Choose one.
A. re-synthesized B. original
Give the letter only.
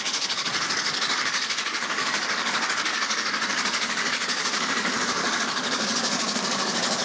A